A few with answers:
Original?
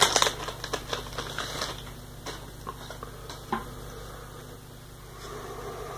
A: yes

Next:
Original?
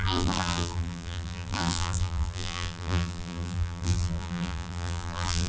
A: no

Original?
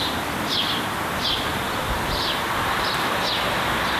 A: yes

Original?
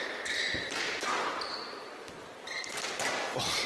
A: yes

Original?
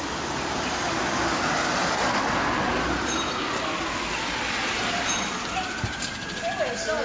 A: yes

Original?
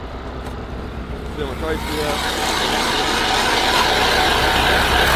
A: yes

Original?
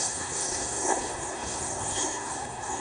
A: no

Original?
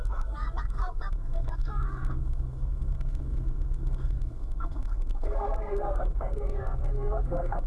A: no